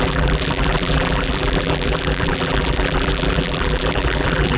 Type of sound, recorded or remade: remade